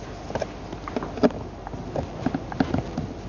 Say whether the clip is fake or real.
real